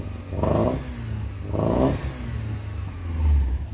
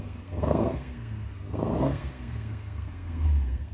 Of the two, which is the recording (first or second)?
first